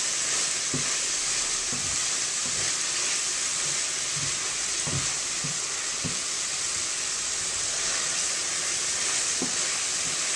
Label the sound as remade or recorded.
recorded